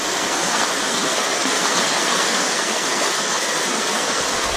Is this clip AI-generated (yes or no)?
yes